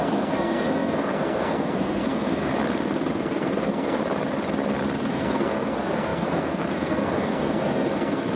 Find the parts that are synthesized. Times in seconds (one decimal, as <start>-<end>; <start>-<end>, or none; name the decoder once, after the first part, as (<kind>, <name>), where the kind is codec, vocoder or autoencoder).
0.0-2.5 (codec, SNAC); 3.1-4.0; 5.1-8.4